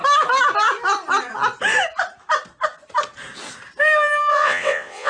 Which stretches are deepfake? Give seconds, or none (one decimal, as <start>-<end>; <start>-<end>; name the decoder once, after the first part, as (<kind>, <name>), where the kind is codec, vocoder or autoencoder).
4.3-5.1 (vocoder, WaveNeXt)